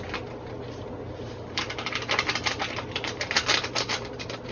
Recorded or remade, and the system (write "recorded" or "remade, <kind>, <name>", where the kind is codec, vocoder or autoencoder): recorded